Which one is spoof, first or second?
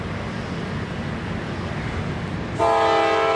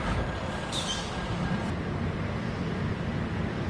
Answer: second